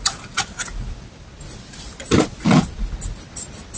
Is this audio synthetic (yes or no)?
no